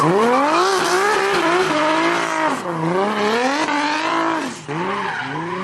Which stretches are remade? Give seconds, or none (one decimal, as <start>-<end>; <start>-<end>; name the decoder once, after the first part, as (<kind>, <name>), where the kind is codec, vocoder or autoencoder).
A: none